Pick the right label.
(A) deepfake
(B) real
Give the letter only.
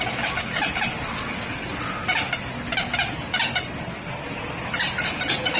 B